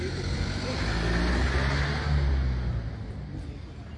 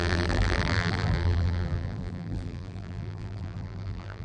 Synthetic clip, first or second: second